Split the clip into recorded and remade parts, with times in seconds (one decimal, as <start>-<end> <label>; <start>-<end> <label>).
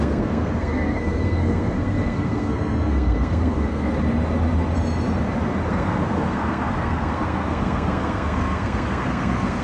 0.0-3.9 remade; 3.9-5.7 recorded; 5.7-9.6 remade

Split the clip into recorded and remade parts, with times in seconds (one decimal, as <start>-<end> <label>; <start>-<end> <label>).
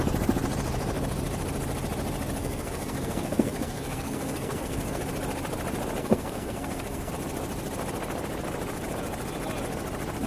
0.0-2.4 recorded; 2.4-5.0 remade; 5.0-6.0 recorded; 6.0-7.1 remade; 7.1-10.3 recorded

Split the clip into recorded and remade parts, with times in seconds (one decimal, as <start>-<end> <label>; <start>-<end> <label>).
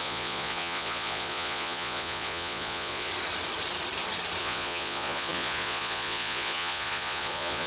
0.0-3.1 remade; 3.1-4.4 recorded; 4.4-7.7 remade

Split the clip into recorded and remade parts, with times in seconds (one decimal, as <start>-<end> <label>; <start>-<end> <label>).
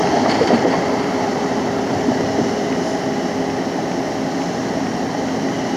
0.0-2.8 remade; 2.8-5.8 recorded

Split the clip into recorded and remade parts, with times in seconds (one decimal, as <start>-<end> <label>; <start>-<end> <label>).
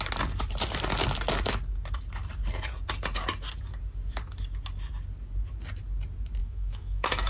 0.0-6.4 recorded; 6.4-7.3 remade